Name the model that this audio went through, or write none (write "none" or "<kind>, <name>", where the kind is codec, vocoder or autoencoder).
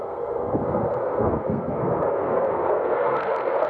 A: codec, SNAC